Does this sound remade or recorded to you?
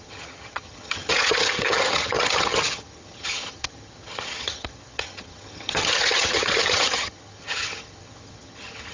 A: remade